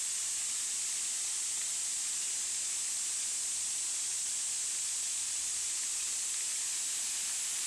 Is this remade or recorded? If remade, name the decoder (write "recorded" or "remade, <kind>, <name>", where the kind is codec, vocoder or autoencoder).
recorded